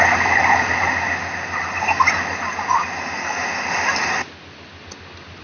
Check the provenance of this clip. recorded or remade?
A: recorded